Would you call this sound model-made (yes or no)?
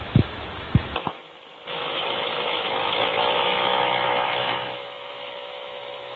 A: yes